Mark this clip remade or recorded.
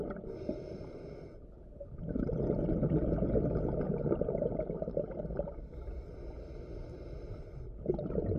recorded